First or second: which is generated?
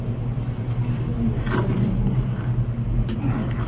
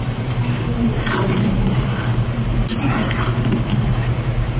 second